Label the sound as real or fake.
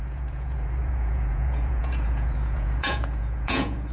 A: fake